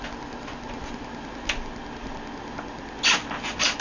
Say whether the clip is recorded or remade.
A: recorded